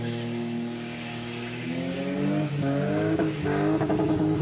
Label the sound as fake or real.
fake